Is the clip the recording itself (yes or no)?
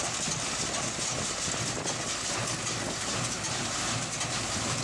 yes